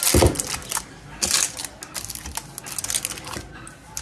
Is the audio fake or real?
real